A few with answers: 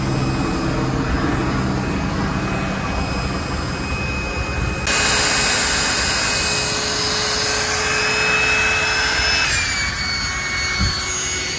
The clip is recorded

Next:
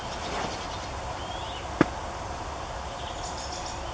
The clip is recorded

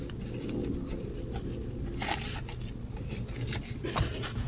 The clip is recorded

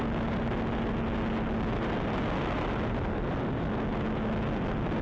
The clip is recorded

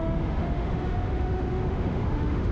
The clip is remade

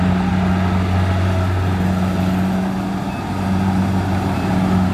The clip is recorded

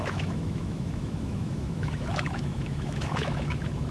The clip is remade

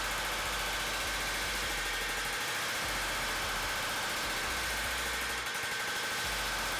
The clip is recorded